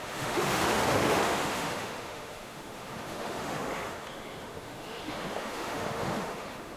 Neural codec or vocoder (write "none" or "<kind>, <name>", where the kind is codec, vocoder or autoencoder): autoencoder, DAC-VAE